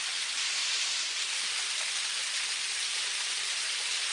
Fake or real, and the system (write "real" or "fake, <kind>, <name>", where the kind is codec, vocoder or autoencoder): real